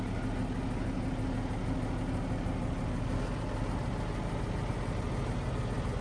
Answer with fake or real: real